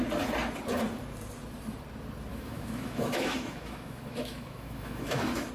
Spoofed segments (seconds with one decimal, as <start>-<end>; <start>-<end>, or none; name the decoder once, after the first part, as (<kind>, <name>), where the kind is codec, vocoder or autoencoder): 2.3-5.5 (autoencoder, DAC-VAE)

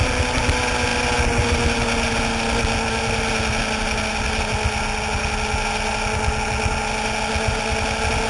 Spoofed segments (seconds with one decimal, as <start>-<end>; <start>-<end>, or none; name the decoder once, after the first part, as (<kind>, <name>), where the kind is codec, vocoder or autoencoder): none

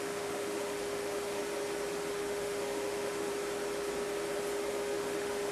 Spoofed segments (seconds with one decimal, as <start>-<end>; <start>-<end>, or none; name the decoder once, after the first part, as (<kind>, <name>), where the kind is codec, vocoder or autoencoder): 0.0-1.4 (autoencoder, DAC-VAE); 2.1-3.3; 4.7-5.5

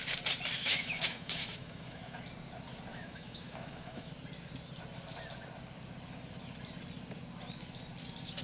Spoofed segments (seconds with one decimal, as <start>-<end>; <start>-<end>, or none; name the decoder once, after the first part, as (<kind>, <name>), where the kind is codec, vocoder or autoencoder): 0.6-2.2 (autoencoder, DAC-VAE); 2.9-4.1

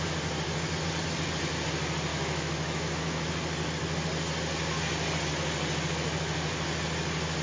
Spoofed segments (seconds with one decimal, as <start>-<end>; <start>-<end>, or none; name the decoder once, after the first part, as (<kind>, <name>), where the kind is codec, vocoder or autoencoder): 2.1-3.3 (autoencoder, DAC-VAE)

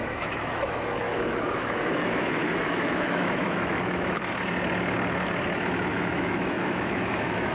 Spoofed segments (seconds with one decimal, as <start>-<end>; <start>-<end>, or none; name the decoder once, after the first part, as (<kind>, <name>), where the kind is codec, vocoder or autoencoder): 0.0-4.2 (autoencoder, DAC-VAE); 5.9-7.5

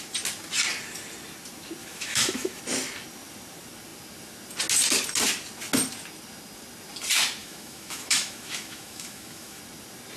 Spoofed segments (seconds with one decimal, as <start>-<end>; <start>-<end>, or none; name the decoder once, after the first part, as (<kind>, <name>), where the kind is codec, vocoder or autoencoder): 1.8-2.6 (autoencoder, DAC-VAE); 7.4-9.6

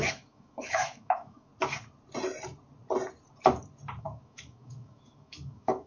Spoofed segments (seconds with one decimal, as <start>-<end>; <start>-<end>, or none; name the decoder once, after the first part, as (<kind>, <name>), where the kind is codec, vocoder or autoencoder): 0.0-1.5 (autoencoder, DAC-VAE); 4.0-5.9